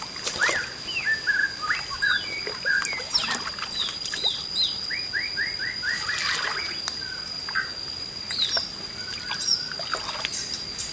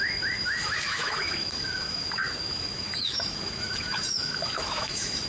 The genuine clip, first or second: first